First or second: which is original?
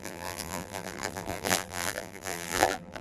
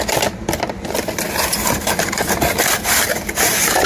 second